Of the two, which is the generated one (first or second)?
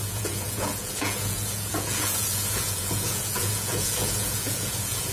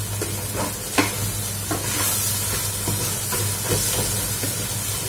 first